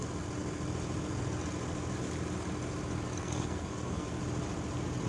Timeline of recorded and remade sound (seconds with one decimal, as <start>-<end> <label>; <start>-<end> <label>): 0.0-3.2 recorded; 3.2-4.2 remade; 4.2-5.1 recorded